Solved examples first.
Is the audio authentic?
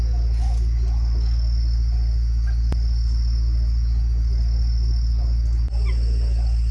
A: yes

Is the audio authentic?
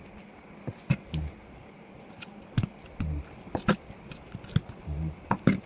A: yes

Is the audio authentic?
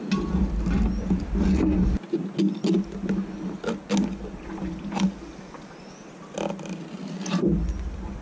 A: yes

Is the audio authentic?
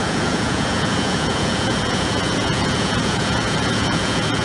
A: no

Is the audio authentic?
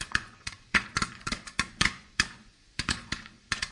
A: no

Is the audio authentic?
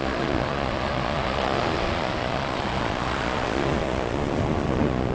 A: no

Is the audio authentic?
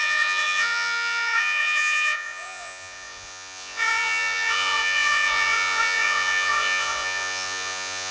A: no